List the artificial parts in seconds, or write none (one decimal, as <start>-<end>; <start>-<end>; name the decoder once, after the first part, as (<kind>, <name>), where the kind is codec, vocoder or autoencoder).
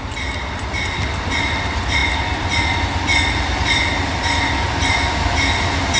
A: none